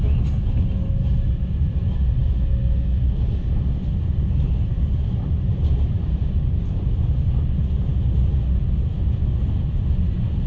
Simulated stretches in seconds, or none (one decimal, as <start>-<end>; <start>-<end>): none